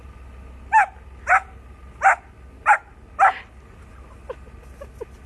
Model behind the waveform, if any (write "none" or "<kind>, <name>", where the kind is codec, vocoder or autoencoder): none